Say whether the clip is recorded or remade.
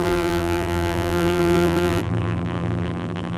remade